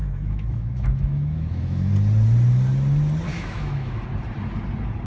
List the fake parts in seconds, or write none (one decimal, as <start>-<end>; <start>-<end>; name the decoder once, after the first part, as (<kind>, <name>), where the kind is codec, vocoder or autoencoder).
0.0-1.9 (autoencoder, DAC-VAE); 3.3-4.0